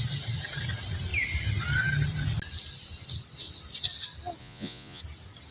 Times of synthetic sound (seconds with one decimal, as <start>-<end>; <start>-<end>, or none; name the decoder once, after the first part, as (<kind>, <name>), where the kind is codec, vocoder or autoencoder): 4.4-5.0 (vocoder, Vocos)